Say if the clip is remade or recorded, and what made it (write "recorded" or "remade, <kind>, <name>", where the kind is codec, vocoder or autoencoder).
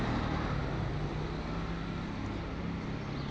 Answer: recorded